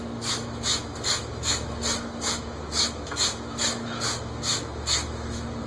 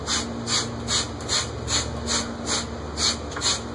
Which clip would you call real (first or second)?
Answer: second